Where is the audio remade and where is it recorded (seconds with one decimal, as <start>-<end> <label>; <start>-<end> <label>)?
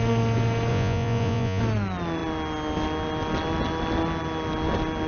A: 0.0-0.7 recorded; 0.7-1.6 remade; 1.6-5.1 recorded